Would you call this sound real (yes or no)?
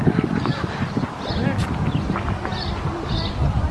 yes